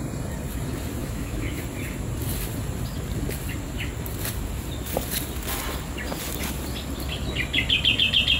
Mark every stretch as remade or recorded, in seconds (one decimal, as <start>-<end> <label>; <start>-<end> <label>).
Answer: 0.0-1.0 recorded; 1.0-1.6 remade; 1.6-8.4 recorded